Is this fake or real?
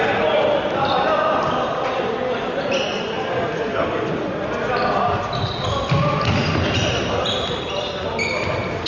real